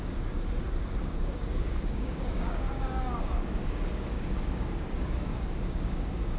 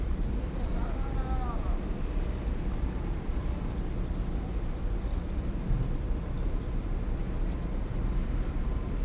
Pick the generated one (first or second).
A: first